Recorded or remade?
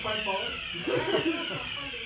recorded